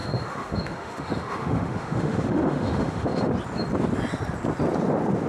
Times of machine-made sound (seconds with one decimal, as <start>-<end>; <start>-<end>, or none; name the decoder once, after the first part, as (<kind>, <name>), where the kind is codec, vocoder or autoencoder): 0.0-3.2 (autoencoder, DAC-VAE)